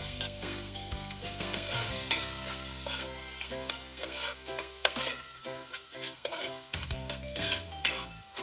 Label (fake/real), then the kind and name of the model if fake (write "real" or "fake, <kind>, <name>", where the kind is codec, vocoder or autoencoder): fake, codec, SNAC